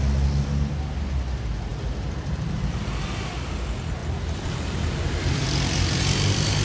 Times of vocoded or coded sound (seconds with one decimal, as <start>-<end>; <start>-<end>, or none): 1.7-3.1; 4.0-6.0